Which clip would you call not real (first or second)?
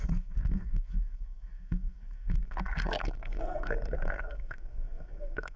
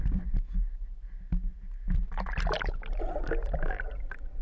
first